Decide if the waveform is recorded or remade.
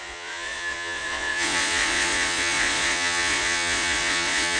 remade